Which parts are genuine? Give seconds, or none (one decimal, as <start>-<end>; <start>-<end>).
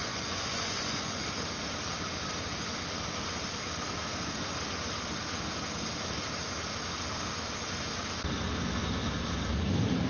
1.2-10.1